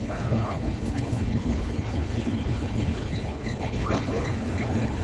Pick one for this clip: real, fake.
fake